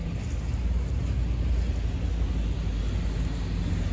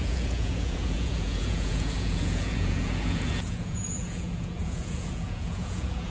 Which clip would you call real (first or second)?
first